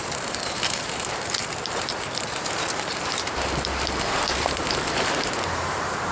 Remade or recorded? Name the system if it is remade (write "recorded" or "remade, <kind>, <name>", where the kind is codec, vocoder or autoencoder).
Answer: remade, vocoder, BigVGAN v2